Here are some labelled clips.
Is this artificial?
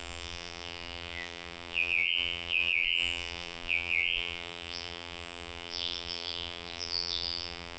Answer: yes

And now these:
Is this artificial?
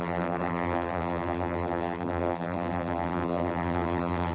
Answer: yes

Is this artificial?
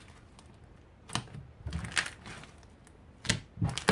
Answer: no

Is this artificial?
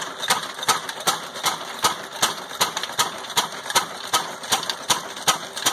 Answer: yes